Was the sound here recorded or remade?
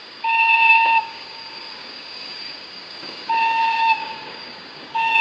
remade